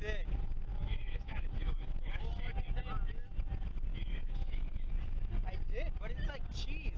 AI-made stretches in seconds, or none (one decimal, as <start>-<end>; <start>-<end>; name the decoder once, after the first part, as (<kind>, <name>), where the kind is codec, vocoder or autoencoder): 0.7-2.2 (autoencoder, DAC-VAE); 3.9-4.9